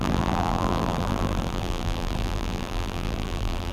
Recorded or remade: remade